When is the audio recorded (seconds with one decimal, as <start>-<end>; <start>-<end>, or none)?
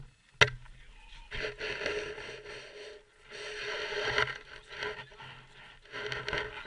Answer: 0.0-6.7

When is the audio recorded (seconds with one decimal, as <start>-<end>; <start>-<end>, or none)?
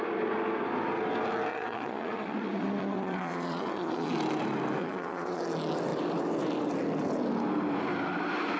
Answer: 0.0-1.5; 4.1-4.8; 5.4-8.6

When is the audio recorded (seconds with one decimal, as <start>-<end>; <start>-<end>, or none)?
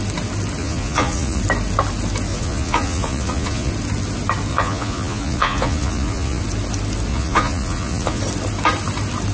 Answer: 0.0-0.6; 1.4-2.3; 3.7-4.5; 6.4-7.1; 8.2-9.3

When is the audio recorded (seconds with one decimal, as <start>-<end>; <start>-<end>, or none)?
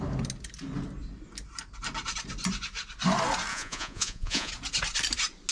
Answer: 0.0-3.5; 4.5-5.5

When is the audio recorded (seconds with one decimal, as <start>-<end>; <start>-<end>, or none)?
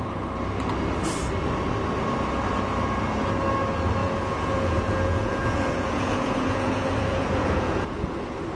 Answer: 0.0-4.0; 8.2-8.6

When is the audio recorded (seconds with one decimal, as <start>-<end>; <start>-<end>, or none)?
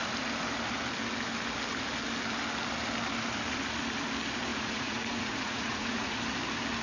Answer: 0.0-4.5; 6.2-6.8